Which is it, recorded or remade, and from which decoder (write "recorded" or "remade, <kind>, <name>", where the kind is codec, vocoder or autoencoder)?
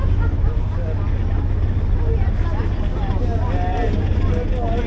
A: recorded